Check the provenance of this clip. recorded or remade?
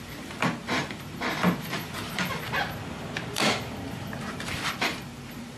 remade